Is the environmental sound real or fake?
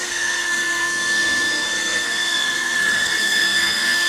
fake